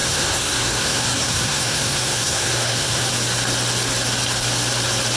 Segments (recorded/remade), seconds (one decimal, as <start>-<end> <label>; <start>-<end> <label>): 0.0-3.1 remade; 3.1-5.2 recorded

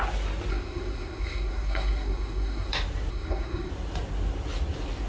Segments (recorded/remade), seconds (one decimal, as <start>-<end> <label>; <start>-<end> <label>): 0.0-0.5 recorded; 0.5-2.7 remade; 2.7-3.1 recorded; 3.1-3.7 remade; 3.7-5.1 recorded